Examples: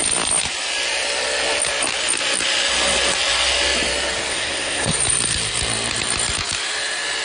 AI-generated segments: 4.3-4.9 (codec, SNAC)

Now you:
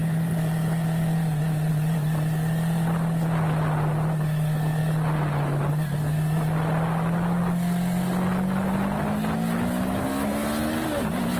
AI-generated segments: none

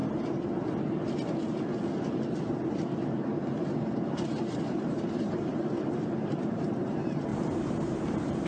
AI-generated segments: 2.7-8.5 (vocoder, BigVGAN v2)

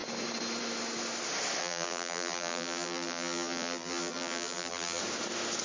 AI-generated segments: 1.6-5.0 (vocoder, BigVGAN v2)

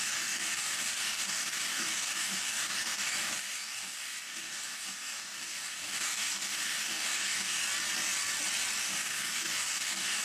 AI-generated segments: 0.0-7.6 (codec, DAC); 8.8-10.2

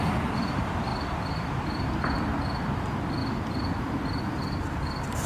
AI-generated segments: 0.9-1.6 (vocoder, BigVGAN v2); 3.2-4.2